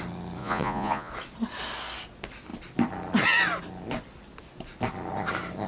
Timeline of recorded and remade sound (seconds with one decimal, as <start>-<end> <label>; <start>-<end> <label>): 0.0-0.4 recorded; 0.4-1.1 remade; 1.1-5.7 recorded